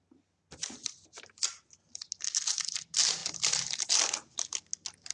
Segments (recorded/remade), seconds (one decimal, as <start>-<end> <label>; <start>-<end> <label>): 0.0-5.1 recorded